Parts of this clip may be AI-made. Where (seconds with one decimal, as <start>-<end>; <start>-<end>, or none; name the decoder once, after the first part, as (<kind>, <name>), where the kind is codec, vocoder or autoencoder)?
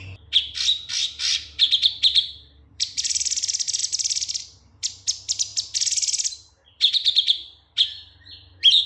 0.0-5.5 (vocoder, BigVGAN v2); 6.5-8.9